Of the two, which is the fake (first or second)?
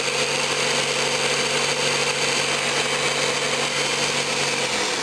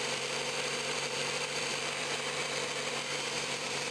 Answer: second